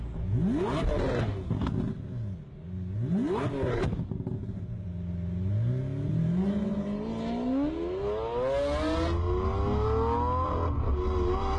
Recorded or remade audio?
recorded